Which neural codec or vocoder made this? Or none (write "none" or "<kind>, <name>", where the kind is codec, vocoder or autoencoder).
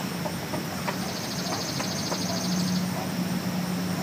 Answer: none